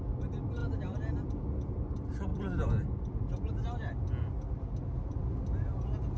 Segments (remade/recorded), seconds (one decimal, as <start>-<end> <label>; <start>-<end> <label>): 0.0-0.6 recorded; 0.6-1.4 remade; 1.4-2.3 recorded; 2.3-3.3 remade; 3.3-6.2 recorded